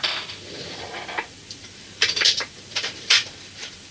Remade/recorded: remade